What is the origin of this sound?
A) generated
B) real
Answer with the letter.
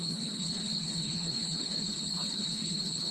A